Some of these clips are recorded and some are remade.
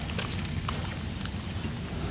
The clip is recorded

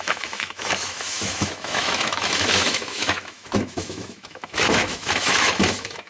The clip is remade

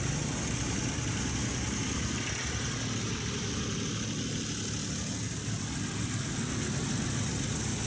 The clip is recorded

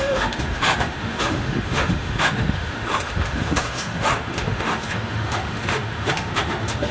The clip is remade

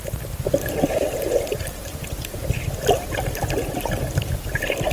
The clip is recorded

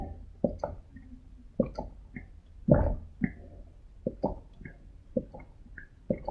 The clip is recorded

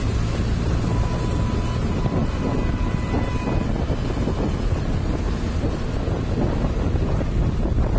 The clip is recorded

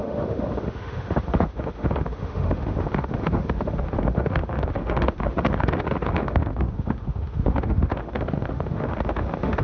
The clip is remade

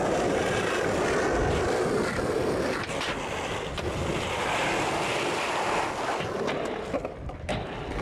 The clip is recorded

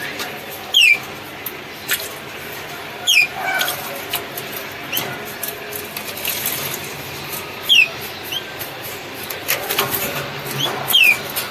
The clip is recorded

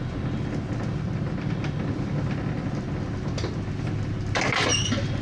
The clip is recorded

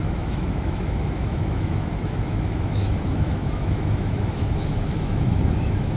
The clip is remade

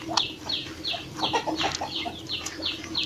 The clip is recorded